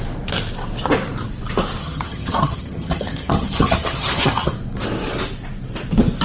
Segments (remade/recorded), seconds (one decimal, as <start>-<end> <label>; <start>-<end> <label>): 0.0-1.8 recorded; 1.8-4.5 remade; 4.5-6.2 recorded